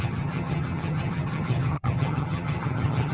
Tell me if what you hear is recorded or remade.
remade